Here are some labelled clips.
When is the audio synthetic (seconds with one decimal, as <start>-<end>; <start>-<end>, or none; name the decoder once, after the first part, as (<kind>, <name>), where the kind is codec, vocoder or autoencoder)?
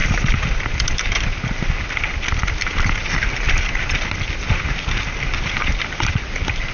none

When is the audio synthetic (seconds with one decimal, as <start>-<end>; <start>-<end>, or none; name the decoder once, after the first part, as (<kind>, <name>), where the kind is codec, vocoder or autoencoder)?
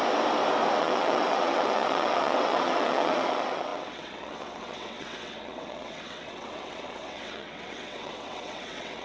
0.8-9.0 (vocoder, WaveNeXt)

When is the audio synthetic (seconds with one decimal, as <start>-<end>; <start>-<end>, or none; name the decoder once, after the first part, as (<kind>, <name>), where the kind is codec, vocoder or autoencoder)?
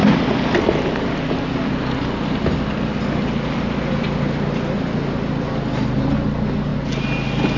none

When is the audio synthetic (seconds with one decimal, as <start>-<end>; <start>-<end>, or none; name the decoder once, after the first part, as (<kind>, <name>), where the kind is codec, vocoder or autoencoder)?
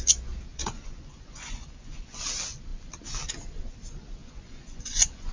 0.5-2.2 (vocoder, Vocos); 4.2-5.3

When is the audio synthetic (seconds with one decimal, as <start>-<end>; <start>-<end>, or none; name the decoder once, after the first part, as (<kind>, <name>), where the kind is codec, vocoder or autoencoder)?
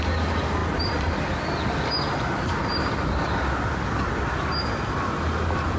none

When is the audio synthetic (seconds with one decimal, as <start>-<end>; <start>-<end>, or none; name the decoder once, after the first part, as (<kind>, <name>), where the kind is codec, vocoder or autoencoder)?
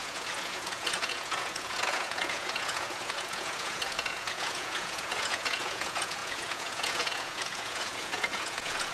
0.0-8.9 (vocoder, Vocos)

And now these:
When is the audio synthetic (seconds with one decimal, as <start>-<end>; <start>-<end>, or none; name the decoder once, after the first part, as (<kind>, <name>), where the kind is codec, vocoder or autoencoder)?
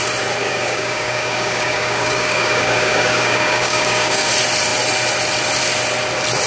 0.4-4.3 (codec, DAC)